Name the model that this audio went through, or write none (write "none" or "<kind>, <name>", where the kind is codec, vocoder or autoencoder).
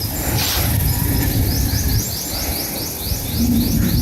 vocoder, BigVGAN v2